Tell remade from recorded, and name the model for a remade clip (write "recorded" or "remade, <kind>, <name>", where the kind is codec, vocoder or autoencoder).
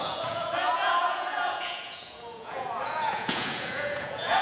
remade, vocoder, Vocos